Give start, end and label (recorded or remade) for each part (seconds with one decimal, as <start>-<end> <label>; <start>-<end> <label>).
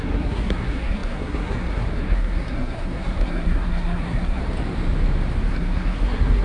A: 0.0-4.4 remade; 4.4-5.5 recorded; 5.5-6.4 remade